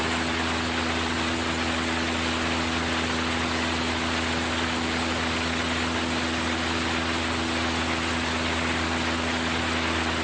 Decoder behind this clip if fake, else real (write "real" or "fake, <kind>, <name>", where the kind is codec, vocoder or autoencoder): real